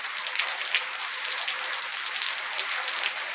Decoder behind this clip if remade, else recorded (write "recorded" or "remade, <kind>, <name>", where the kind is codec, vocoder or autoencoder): recorded